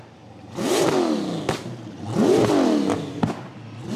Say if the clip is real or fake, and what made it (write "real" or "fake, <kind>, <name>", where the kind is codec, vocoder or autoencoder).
real